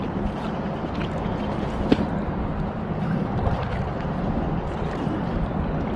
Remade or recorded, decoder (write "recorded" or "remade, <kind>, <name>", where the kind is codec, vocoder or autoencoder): recorded